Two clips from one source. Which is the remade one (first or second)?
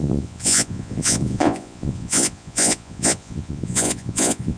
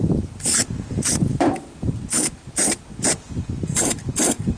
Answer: first